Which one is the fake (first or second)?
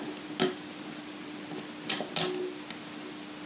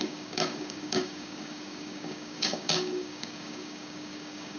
second